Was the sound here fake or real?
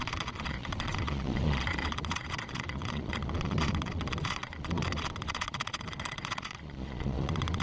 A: fake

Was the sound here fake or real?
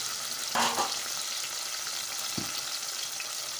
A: real